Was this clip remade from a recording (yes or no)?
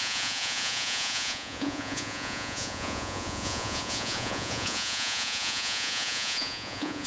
yes